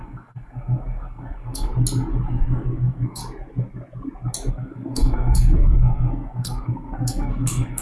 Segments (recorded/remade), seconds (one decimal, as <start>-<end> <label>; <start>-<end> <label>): 0.0-1.7 remade; 1.7-2.3 recorded; 2.3-3.2 remade; 3.2-4.5 recorded; 4.5-7.8 remade